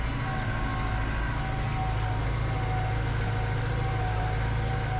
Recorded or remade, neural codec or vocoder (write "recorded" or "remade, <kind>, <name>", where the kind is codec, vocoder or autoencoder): recorded